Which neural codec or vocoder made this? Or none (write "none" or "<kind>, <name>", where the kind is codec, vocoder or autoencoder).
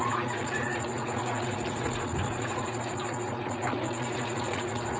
vocoder, Vocos